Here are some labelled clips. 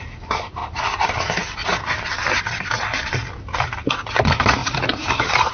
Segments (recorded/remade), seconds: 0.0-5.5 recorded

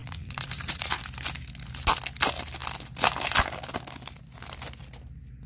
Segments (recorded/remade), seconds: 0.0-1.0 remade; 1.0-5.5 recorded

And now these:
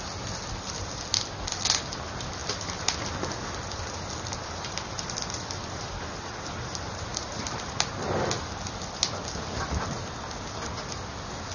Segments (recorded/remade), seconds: 0.0-11.5 recorded